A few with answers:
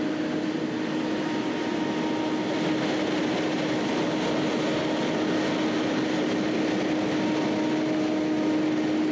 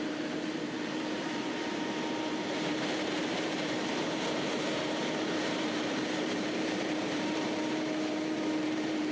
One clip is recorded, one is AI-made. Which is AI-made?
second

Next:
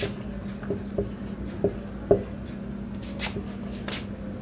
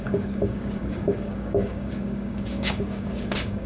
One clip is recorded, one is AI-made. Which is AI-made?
second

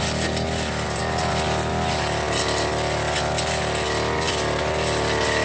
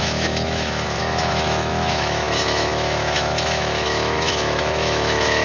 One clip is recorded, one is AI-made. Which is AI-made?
second